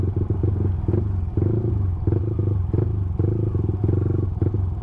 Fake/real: real